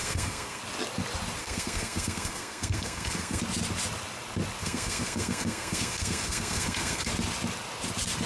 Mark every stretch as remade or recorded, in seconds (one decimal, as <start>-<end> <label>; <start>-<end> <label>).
0.0-0.6 remade; 0.6-1.4 recorded; 1.4-3.4 remade; 3.4-4.6 recorded; 4.6-7.1 remade; 7.1-8.3 recorded